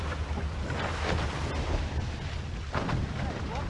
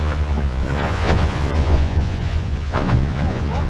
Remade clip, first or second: second